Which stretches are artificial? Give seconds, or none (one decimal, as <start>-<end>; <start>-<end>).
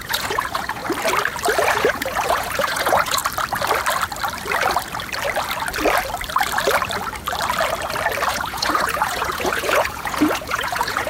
0.0-0.8; 1.7-3.2; 8.3-11.1